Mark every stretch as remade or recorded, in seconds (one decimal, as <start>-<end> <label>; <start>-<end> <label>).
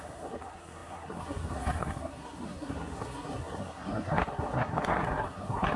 0.0-5.8 remade